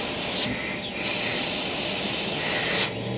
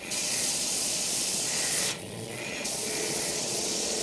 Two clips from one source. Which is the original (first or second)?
first